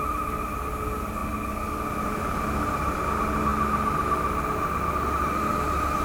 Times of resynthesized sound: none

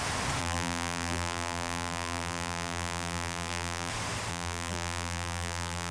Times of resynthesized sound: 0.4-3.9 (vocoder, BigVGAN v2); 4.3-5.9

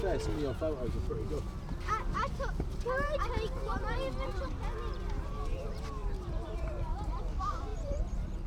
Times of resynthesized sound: 6.0-7.2 (vocoder, BigVGAN v2); 7.7-8.5

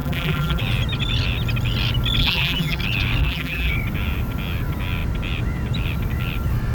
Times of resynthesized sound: 0.0-0.6 (vocoder, BigVGAN v2); 2.2-2.8; 3.2-3.7

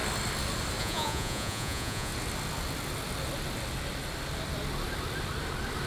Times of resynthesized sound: 0.8-2.1 (vocoder, Vocos)